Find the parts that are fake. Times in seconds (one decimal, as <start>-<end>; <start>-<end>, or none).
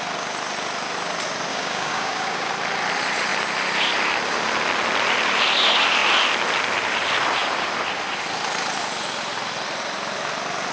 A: 1.5-2.5